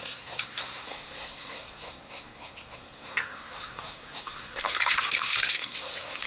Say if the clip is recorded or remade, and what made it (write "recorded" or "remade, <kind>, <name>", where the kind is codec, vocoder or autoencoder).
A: remade, codec, SNAC